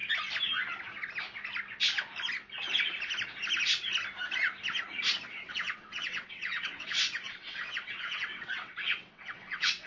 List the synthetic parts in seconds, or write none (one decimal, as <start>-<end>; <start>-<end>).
5.3-9.9